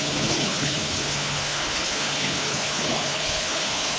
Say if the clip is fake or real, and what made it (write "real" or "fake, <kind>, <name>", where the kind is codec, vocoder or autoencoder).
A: fake, codec, HILCodec